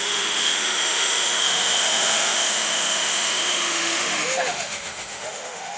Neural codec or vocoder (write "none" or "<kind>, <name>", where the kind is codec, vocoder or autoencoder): autoencoder, DAC-VAE